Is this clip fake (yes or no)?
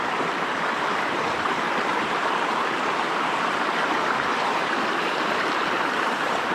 yes